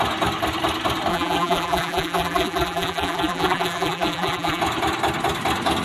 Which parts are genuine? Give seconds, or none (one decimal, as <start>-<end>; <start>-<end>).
0.0-1.1; 4.6-5.8